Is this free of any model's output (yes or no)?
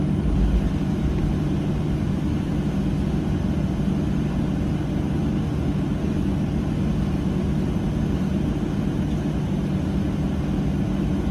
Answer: yes